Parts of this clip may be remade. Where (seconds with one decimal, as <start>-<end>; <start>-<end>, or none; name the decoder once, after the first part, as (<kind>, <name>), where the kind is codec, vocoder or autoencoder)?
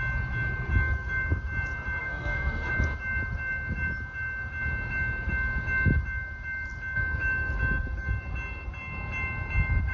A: 2.0-2.7 (codec, SNAC)